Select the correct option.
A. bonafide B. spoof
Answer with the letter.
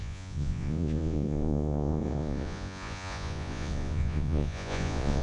B